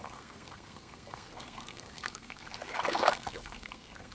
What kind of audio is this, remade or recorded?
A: remade